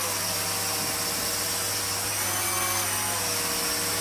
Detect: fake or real real